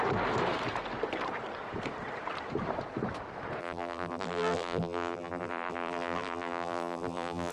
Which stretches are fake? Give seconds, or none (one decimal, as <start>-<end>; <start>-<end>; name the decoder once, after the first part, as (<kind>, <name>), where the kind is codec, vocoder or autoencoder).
3.6-7.5 (vocoder, BigVGAN v2)